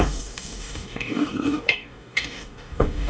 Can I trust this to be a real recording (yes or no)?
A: no